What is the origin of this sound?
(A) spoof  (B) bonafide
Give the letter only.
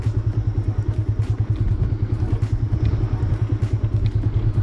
B